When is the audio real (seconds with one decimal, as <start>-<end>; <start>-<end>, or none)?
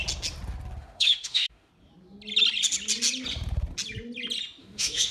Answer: 0.0-0.8; 1.7-4.6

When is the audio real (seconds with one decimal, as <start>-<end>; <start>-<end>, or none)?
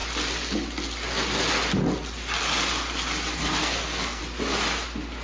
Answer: 0.0-3.4; 4.2-5.2